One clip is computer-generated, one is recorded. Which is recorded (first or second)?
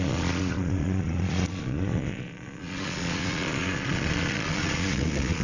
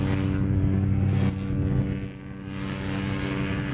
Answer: second